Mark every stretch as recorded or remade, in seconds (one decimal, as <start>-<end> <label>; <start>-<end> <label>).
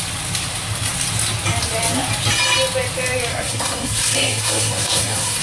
0.0-3.3 recorded; 3.3-5.4 remade